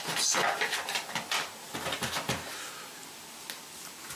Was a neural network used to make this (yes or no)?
no